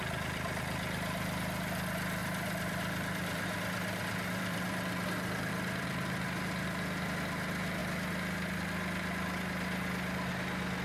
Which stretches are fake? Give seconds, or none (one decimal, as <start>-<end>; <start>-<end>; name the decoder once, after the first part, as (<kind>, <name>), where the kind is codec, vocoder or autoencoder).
2.2-5.5 (vocoder, BigVGAN v2)